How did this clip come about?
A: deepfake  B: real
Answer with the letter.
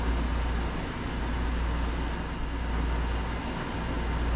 B